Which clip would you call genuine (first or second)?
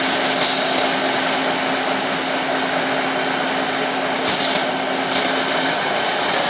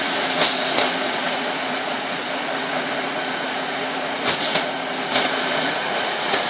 first